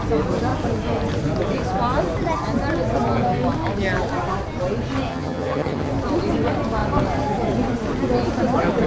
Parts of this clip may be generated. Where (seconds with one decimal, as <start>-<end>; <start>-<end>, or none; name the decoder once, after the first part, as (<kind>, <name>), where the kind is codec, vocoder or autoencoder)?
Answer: 5.1-5.9 (vocoder, HiFi-GAN)